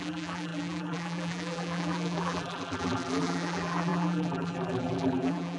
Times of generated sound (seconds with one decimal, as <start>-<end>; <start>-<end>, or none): 0.0-5.6